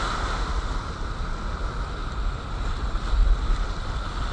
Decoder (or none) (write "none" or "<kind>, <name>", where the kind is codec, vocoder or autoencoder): none